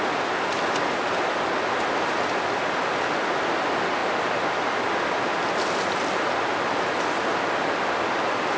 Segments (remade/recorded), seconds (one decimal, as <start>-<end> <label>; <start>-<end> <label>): 0.0-8.6 recorded